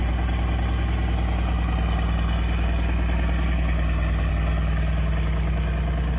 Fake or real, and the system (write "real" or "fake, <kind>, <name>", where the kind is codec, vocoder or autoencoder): real